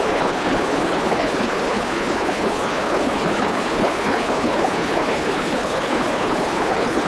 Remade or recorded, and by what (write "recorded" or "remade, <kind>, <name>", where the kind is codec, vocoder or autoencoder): remade, codec, HILCodec